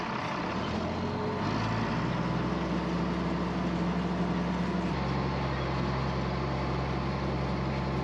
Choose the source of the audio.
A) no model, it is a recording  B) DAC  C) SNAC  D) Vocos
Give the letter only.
A